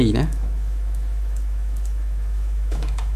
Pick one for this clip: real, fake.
fake